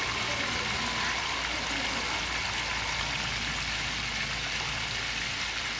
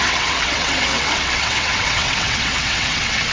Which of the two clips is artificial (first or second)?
second